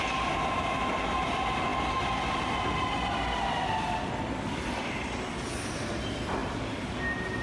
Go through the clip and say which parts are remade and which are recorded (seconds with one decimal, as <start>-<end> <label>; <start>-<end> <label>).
0.0-7.4 recorded